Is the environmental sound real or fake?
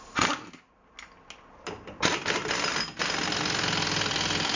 real